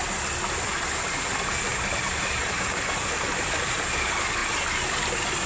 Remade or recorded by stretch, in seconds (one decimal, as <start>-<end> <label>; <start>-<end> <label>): 0.0-5.5 recorded